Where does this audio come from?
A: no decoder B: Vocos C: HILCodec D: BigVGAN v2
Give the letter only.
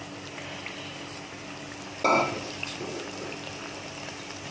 A